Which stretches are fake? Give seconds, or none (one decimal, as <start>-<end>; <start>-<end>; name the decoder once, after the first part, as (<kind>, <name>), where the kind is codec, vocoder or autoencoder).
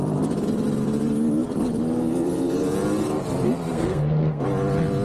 3.7-4.4 (codec, SNAC)